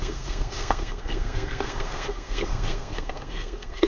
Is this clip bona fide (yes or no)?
no